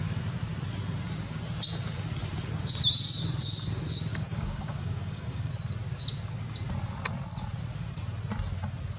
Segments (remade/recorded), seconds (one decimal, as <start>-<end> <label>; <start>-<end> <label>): 0.0-4.1 recorded; 4.1-5.5 remade; 5.5-9.0 recorded